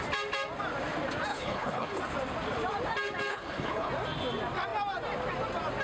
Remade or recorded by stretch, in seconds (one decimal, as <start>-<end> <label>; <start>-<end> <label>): 0.0-1.3 recorded; 1.3-2.0 remade; 2.0-3.3 recorded; 3.3-3.9 remade; 3.9-5.8 recorded